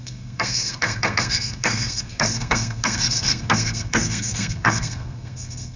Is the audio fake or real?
fake